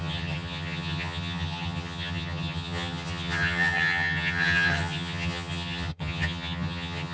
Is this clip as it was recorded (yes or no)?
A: no